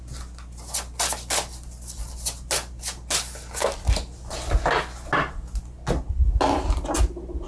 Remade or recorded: recorded